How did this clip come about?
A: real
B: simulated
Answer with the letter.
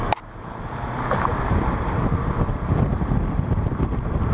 A